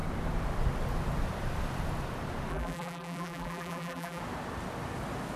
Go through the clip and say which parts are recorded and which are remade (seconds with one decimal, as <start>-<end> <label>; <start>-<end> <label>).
0.0-2.5 recorded; 2.5-4.2 remade; 4.2-5.4 recorded